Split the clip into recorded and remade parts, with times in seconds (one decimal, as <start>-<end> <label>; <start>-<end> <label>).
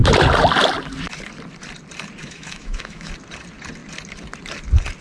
0.0-2.2 recorded; 2.2-3.1 remade; 3.1-5.0 recorded